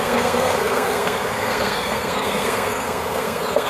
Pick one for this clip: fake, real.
fake